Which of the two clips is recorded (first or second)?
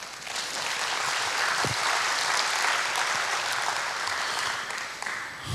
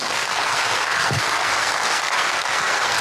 first